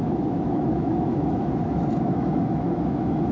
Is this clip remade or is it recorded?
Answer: remade